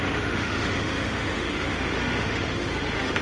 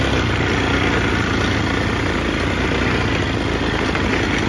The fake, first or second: first